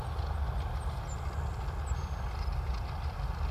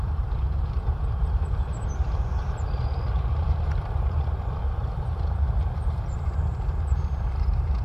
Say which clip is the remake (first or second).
second